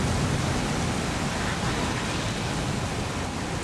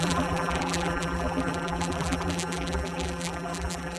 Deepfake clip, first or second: second